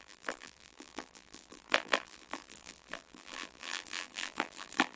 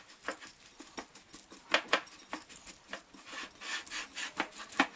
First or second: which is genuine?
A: second